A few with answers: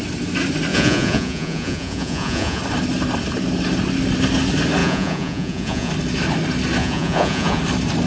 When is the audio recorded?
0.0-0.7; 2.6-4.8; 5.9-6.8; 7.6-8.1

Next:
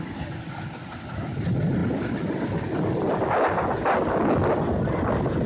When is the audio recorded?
0.0-5.5

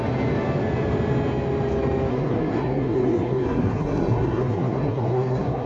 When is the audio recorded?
0.0-2.1

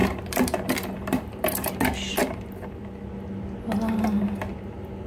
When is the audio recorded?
1.8-2.2; 2.9-5.1

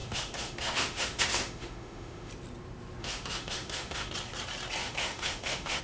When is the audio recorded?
2.3-3.0; 4.1-4.8